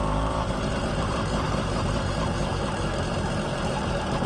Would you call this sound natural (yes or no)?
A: no